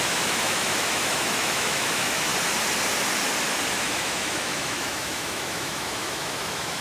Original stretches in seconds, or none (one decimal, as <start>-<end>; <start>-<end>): 2.3-3.7